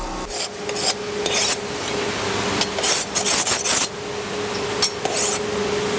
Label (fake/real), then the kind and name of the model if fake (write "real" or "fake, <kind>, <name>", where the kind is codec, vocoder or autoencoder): real